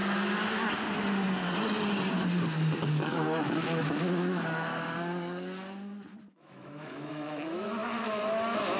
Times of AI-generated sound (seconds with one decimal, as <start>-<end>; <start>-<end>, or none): 2.9-4.7; 6.3-8.8